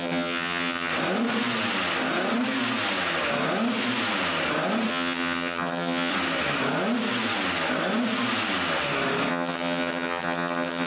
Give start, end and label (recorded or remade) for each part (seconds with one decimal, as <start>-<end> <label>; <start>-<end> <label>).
0.0-0.9 remade; 0.9-4.9 recorded; 4.9-6.1 remade; 6.1-9.3 recorded; 9.3-10.9 remade